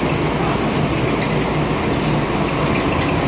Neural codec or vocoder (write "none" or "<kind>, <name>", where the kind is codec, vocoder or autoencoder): none